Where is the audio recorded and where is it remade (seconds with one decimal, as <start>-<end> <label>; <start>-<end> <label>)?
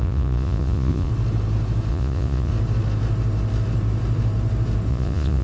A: 0.0-1.1 remade; 1.1-1.9 recorded; 1.9-2.5 remade; 2.5-4.9 recorded; 4.9-5.4 remade